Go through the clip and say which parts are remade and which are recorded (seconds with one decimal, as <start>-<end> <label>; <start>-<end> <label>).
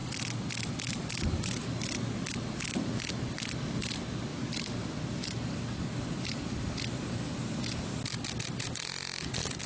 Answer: 0.0-9.7 recorded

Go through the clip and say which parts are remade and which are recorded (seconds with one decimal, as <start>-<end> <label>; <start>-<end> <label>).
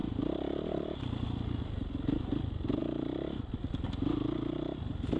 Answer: 0.0-5.2 recorded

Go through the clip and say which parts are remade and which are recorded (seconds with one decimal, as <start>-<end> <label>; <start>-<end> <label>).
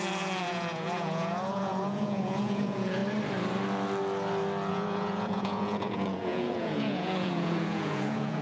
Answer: 0.0-3.0 remade; 3.0-4.7 recorded; 4.7-8.4 remade